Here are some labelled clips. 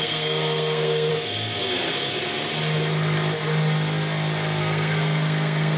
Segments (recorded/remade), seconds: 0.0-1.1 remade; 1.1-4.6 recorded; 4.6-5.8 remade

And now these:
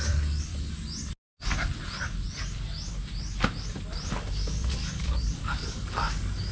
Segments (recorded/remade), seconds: 0.0-0.5 remade; 0.5-4.1 recorded; 4.1-6.5 remade

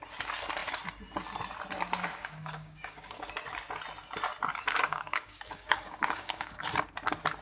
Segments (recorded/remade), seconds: 0.0-2.1 recorded; 2.1-3.3 remade; 3.3-4.5 recorded; 4.5-6.6 remade; 6.6-7.4 recorded

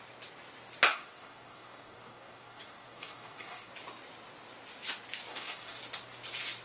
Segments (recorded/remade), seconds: 0.0-0.9 recorded; 0.9-3.7 remade; 3.7-5.3 recorded; 5.3-5.8 remade; 5.8-6.6 recorded